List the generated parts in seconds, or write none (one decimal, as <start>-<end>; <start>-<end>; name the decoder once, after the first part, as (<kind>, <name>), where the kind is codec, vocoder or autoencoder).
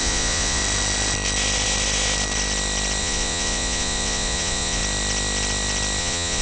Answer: 0.0-0.6 (vocoder, Vocos); 3.0-4.8; 6.0-6.4